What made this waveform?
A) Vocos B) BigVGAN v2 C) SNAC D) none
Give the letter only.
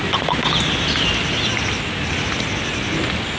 D